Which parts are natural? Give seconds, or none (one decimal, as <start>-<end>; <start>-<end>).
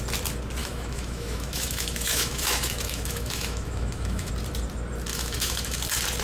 0.0-0.6; 4.3-5.1; 5.8-6.2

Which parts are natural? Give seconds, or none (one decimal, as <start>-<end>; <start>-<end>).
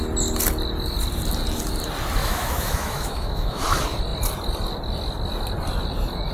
0.0-2.2; 3.6-6.3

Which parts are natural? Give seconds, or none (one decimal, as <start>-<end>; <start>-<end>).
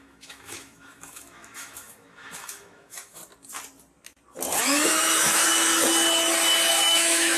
3.2-4.6; 5.4-6.7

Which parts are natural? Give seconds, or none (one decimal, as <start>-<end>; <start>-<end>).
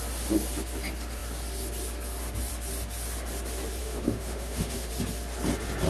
0.0-3.8; 4.9-5.9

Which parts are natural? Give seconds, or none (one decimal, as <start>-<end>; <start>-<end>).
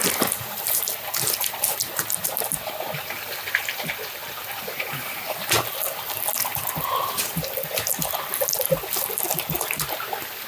0.0-10.5